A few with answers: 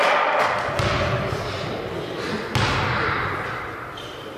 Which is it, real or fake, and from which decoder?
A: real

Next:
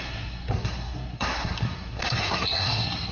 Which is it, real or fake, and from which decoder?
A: fake, codec, SNAC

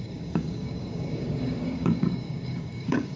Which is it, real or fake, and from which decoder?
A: fake, codec, DAC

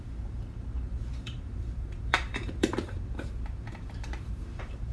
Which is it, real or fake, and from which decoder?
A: fake, vocoder, BigVGAN v2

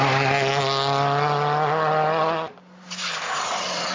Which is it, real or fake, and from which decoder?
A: real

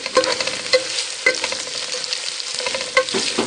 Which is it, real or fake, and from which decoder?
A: real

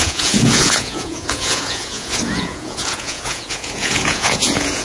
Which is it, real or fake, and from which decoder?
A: fake, vocoder, Vocos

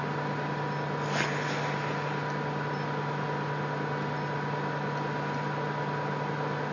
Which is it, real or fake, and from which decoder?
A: real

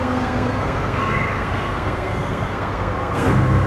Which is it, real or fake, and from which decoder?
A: fake, codec, SNAC